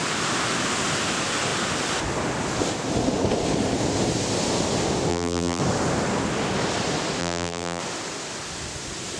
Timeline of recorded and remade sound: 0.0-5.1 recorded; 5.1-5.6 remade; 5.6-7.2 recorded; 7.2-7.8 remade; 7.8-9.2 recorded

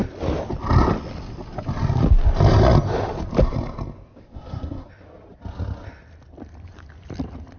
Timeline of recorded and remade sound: 0.0-4.2 recorded; 4.2-4.9 remade; 4.9-7.6 recorded

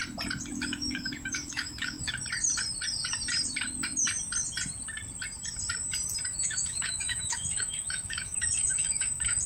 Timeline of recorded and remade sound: 0.0-0.5 recorded; 0.5-2.1 remade; 2.1-6.3 recorded; 6.3-9.5 remade

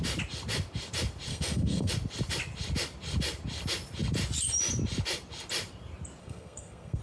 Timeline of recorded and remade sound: 0.0-1.3 recorded; 1.3-1.9 remade; 1.9-6.2 recorded; 6.2-7.0 remade

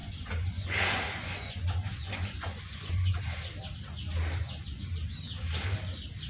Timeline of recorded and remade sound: 0.0-3.2 remade; 3.2-6.3 recorded